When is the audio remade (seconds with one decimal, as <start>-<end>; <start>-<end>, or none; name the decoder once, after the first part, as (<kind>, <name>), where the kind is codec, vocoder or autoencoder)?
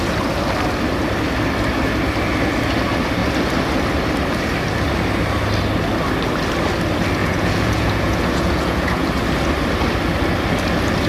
7.2-9.1 (vocoder, Vocos)